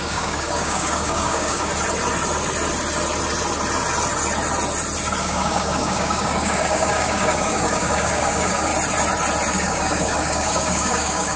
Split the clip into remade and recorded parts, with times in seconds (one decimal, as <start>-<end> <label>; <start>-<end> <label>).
0.0-1.7 remade; 1.7-5.2 recorded; 5.2-8.7 remade; 8.7-9.5 recorded; 9.5-11.4 remade